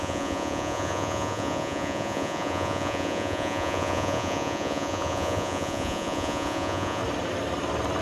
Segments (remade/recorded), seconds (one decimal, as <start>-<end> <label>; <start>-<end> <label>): 0.0-7.0 remade; 7.0-8.0 recorded